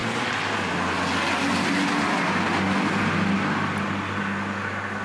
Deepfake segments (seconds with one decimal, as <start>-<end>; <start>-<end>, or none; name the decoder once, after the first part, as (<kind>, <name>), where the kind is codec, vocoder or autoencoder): none